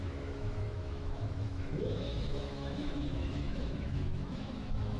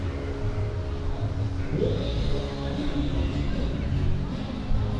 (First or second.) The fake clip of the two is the first